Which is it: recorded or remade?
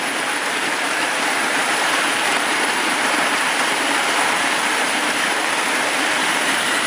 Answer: remade